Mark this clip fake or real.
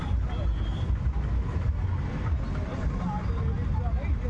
real